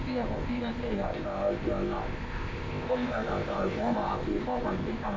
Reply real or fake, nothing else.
fake